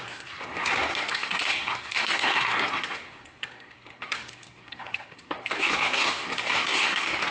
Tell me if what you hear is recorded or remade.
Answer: remade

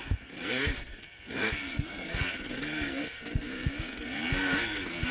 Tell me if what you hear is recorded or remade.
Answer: remade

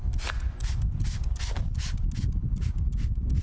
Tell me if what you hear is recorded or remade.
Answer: recorded